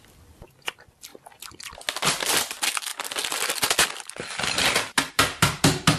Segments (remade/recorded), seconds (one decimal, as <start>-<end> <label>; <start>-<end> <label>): 0.0-1.1 remade; 1.1-2.0 recorded; 2.0-2.9 remade; 2.9-5.1 recorded; 5.1-6.0 remade